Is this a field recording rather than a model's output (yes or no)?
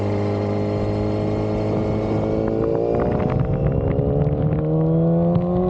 yes